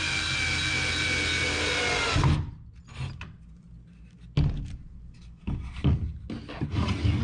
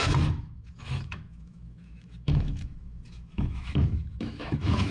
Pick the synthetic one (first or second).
second